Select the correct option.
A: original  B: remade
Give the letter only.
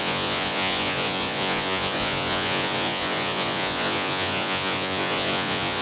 B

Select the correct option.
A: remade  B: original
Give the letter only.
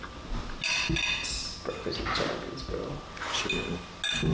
B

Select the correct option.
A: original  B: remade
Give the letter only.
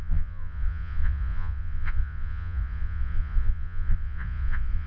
B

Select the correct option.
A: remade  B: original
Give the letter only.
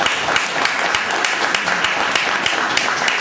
B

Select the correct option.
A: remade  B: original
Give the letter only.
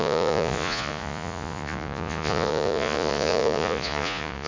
A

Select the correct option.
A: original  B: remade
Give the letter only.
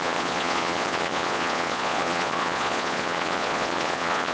B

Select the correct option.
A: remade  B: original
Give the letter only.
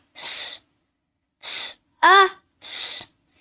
A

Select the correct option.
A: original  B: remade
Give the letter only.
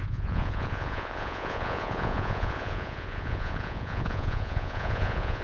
B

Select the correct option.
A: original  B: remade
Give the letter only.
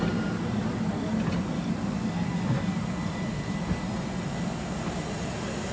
A